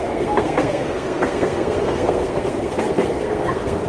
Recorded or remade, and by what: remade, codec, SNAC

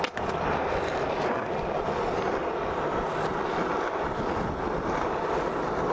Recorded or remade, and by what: recorded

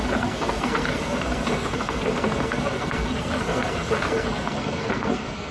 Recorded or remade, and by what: remade, codec, SNAC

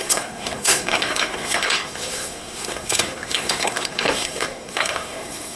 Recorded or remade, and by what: remade, codec, SNAC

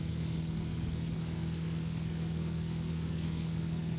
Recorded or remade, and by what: remade, codec, SNAC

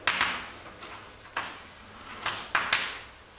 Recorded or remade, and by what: recorded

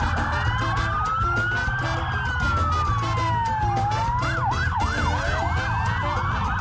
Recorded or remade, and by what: recorded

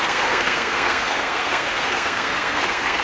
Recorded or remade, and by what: remade, codec, SNAC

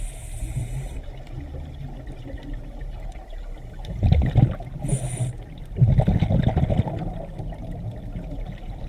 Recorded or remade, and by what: recorded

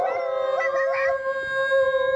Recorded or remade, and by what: recorded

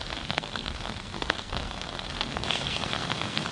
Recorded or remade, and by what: remade, codec, SNAC